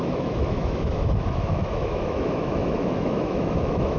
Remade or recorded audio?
remade